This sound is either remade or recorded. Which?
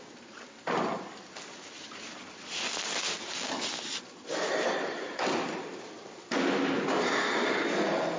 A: remade